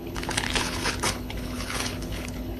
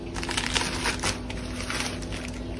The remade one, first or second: first